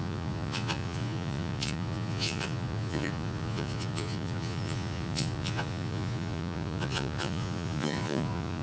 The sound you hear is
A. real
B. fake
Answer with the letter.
B